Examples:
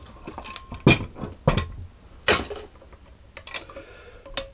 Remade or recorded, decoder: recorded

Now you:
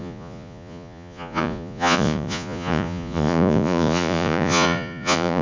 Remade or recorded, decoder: remade, vocoder, Vocos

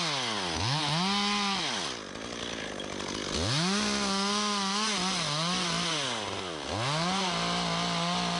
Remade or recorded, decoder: recorded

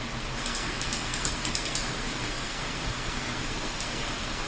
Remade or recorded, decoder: remade, codec, SNAC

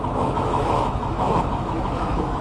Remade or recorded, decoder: remade, autoencoder, DAC-VAE